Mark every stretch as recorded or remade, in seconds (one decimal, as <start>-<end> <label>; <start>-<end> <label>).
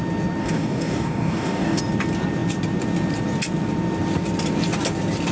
0.0-0.4 recorded; 0.4-1.8 remade; 1.8-5.3 recorded